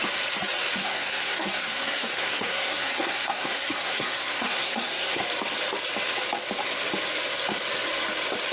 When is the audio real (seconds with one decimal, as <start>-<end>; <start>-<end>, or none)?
0.0-0.8; 5.2-8.5